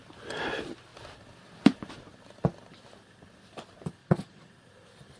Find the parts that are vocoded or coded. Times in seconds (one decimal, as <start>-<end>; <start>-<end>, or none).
4.0-4.5